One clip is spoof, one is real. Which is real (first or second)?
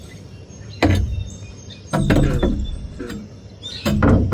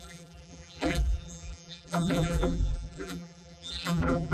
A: first